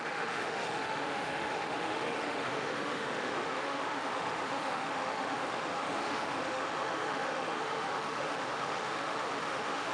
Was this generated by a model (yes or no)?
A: yes